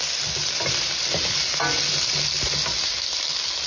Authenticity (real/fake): real